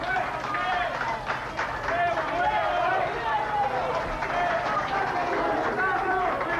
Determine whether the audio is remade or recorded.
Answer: remade